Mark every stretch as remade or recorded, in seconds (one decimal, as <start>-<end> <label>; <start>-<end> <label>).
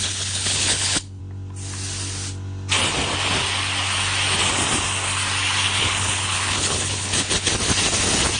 0.0-1.2 remade; 1.2-5.8 recorded; 5.8-7.5 remade; 7.5-8.4 recorded